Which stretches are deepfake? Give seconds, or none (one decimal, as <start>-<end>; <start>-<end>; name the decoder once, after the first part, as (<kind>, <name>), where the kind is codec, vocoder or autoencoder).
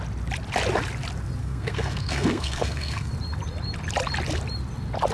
1.4-3.1 (codec, SNAC)